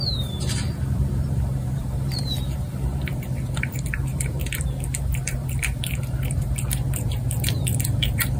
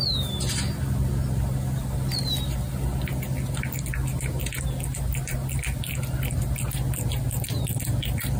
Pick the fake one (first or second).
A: first